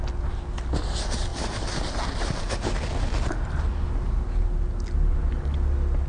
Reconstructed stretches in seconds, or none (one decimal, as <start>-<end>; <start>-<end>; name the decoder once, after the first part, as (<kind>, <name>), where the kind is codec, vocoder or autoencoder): none